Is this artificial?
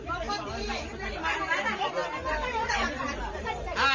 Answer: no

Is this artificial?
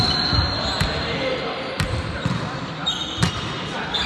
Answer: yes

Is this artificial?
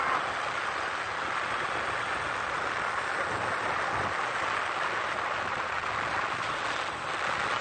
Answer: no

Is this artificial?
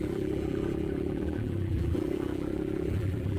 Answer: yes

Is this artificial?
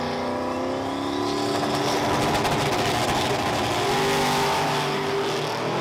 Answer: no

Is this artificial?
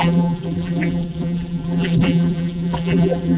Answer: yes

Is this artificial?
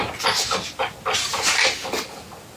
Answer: no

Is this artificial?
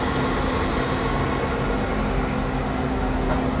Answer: no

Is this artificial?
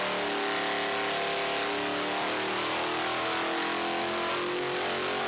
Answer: no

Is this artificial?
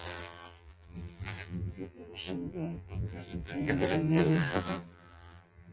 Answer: yes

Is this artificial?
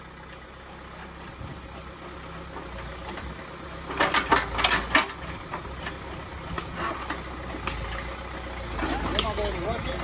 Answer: no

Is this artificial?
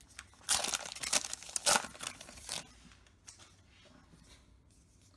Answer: no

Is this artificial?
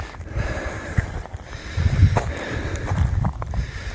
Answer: yes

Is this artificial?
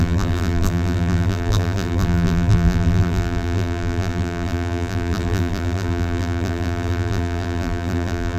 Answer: yes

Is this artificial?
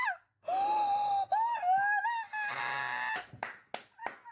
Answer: no